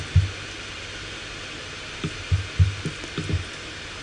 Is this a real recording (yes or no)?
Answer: yes